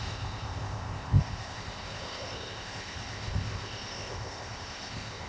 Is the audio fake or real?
fake